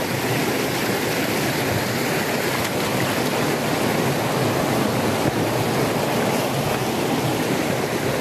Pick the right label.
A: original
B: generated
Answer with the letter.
A